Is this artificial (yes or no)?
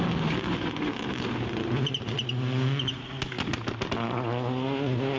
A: no